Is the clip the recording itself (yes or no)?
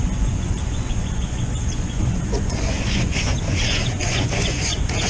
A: no